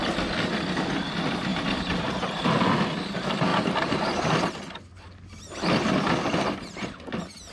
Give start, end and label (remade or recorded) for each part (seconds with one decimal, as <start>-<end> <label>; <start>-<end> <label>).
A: 0.0-1.5 recorded; 1.5-2.6 remade; 2.6-3.5 recorded; 3.5-4.3 remade; 4.3-7.5 recorded